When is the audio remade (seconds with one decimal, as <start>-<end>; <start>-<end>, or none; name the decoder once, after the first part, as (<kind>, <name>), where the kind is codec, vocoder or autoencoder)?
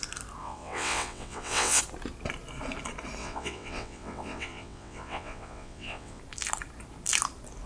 0.4-1.8 (vocoder, WaveNeXt); 3.2-6.2